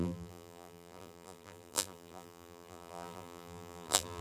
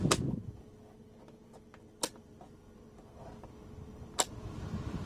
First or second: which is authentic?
second